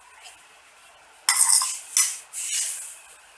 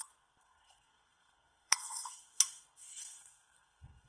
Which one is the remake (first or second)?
second